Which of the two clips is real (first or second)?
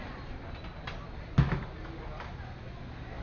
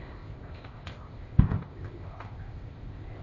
first